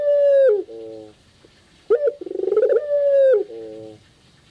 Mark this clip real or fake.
real